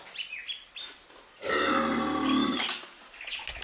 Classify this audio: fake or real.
real